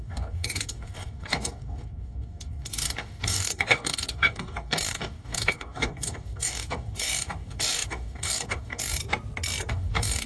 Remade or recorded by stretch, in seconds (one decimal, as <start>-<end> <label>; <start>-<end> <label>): 0.0-9.0 remade; 9.0-9.7 recorded; 9.7-10.3 remade